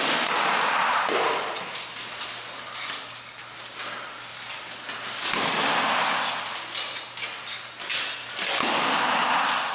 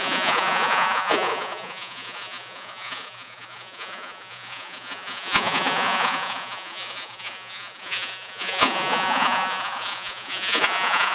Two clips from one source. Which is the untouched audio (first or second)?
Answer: first